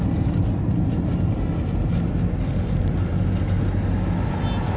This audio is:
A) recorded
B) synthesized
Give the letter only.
A